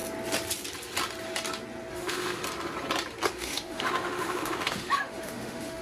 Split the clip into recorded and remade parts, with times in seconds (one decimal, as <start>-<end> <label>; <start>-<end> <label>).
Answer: 0.0-1.9 recorded; 1.9-2.4 remade; 2.4-3.3 recorded; 3.3-5.8 remade